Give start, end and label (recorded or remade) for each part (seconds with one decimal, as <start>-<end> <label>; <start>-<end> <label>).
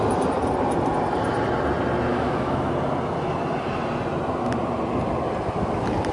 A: 0.0-2.1 recorded; 2.1-2.7 remade; 2.7-6.1 recorded